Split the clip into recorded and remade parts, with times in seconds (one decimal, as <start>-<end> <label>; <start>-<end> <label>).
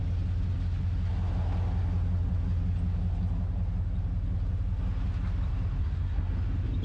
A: 0.0-5.8 recorded; 5.8-6.3 remade; 6.3-6.8 recorded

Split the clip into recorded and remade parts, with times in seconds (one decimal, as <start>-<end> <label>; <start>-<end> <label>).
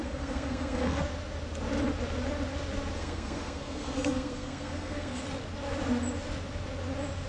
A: 0.0-1.0 remade; 1.0-3.0 recorded; 3.0-5.2 remade; 5.2-7.3 recorded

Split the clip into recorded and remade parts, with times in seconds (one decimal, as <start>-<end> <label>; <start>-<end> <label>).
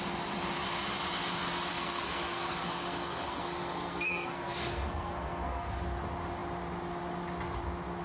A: 0.0-1.7 recorded; 1.7-5.8 remade; 5.8-8.0 recorded